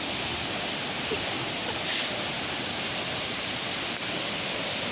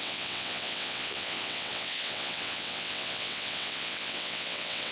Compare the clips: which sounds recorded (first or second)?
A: first